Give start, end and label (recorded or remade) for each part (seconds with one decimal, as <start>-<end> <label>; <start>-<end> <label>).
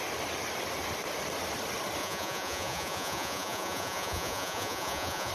0.0-2.0 recorded; 2.0-5.3 remade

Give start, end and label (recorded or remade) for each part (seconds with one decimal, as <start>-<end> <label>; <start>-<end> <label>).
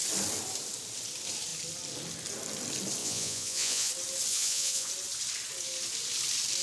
0.0-3.0 recorded; 3.0-3.9 remade; 3.9-4.3 recorded; 4.3-4.9 remade; 4.9-6.6 recorded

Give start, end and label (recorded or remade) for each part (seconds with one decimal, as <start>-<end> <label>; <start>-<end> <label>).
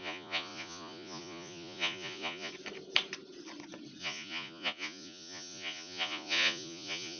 0.0-2.5 remade; 2.5-4.0 recorded; 4.0-7.2 remade